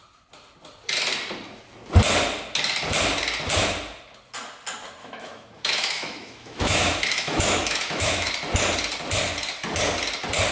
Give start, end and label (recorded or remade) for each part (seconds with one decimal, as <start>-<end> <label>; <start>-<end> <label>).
0.0-5.0 recorded; 5.0-8.3 remade; 8.3-10.5 recorded